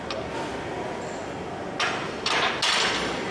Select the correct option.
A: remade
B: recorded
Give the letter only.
B